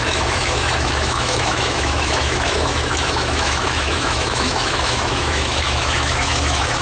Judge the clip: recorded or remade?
remade